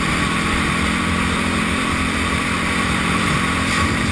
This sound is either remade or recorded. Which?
recorded